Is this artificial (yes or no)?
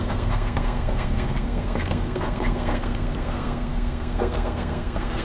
yes